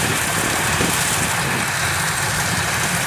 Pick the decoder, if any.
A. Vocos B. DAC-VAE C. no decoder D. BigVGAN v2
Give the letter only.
C